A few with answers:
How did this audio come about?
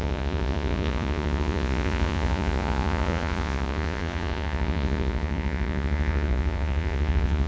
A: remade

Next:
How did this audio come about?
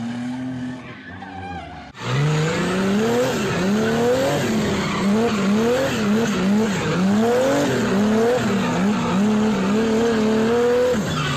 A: recorded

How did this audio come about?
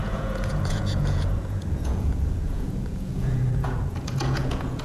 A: remade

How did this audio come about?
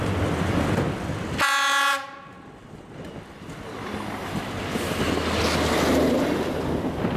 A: recorded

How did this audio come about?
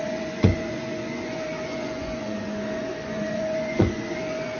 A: remade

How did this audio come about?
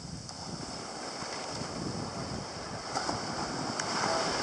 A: recorded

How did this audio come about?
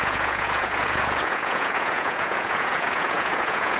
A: remade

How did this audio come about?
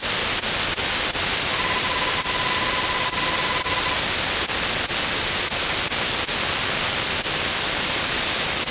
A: recorded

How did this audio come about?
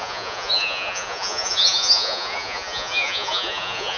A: remade